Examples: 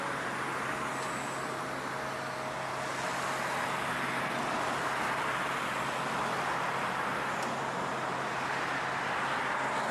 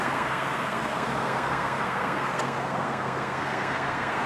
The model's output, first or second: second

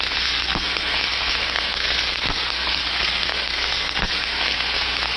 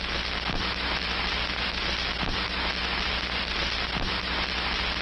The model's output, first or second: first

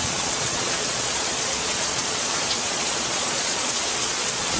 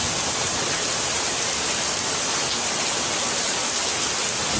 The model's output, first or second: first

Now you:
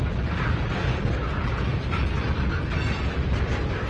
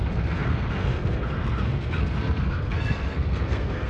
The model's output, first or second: second